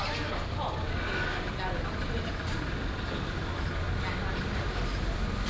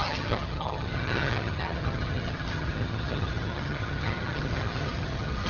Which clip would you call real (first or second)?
first